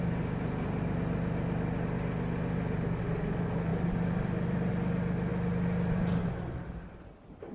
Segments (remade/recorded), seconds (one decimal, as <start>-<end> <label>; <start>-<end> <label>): 0.0-3.7 recorded; 3.7-4.7 remade; 4.7-5.3 recorded; 5.3-6.2 remade; 6.2-7.5 recorded